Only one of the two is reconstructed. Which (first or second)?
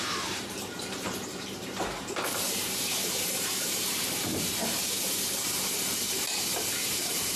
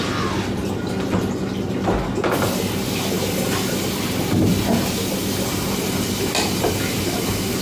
first